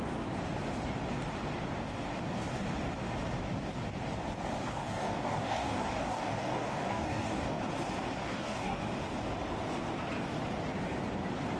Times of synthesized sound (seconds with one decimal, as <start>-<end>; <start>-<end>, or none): 4.6-7.6; 8.2-8.8